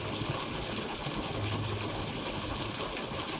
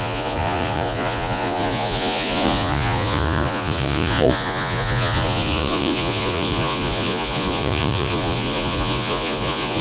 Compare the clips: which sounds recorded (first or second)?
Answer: first